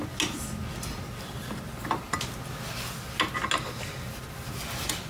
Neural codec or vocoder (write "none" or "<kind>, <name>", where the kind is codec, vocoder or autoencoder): none